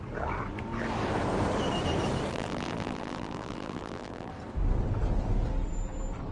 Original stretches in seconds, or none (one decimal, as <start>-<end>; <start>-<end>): 0.0-2.3; 4.3-6.3